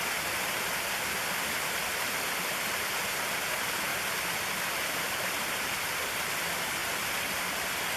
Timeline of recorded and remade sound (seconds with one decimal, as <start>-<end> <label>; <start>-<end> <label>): 0.0-8.0 recorded